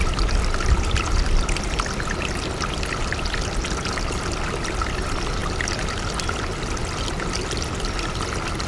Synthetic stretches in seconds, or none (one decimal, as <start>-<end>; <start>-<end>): none